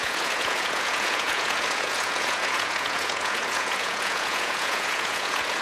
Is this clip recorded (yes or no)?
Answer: no